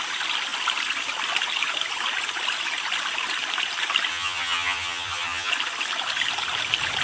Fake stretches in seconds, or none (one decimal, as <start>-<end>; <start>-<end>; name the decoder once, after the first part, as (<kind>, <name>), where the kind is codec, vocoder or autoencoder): 4.1-5.5 (vocoder, HiFi-GAN)